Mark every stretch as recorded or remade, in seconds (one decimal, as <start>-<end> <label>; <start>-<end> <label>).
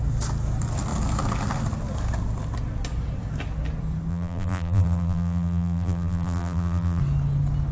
0.0-4.1 recorded; 4.1-7.0 remade; 7.0-7.7 recorded